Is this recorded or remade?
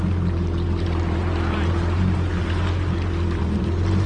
recorded